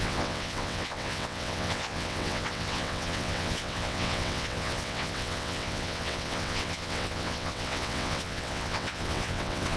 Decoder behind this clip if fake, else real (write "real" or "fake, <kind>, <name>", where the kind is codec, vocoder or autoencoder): fake, vocoder, WaveNeXt